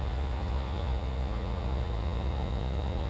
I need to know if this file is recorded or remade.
remade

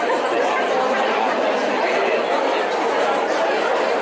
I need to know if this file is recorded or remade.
recorded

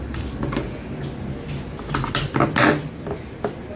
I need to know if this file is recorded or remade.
recorded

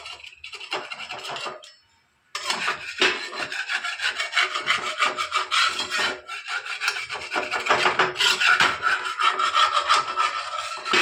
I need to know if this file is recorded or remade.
recorded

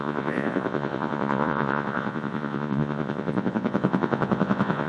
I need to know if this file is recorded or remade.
remade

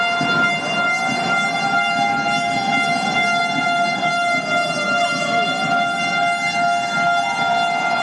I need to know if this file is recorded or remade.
recorded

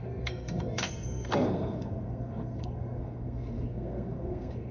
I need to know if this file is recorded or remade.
remade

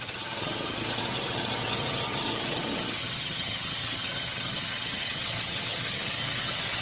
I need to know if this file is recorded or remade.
remade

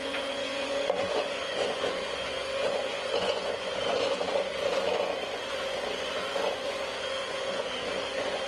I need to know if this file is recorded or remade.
remade